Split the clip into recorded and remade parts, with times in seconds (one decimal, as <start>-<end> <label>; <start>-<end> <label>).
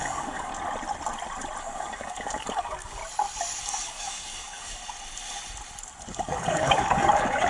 0.0-0.5 remade; 0.5-1.6 recorded; 1.6-3.0 remade; 3.0-3.6 recorded; 3.6-4.8 remade; 4.8-6.1 recorded; 6.1-7.5 remade